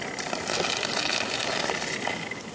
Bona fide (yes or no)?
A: yes